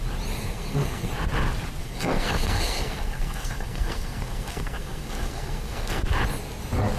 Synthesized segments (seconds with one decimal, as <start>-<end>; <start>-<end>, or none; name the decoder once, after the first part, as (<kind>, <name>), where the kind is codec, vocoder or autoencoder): 0.4-1.1 (codec, SNAC); 1.8-6.0